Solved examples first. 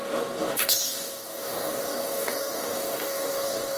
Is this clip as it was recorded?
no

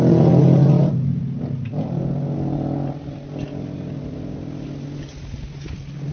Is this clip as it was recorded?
yes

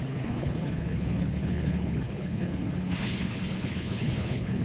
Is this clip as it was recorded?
no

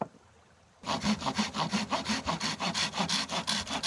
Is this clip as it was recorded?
yes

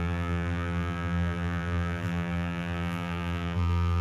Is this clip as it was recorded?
no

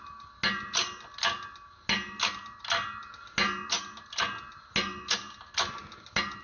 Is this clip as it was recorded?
yes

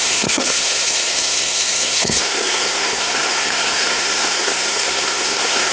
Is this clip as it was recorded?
no